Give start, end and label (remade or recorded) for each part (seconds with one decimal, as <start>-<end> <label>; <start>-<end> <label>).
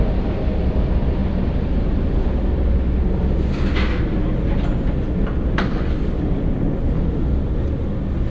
0.0-8.3 recorded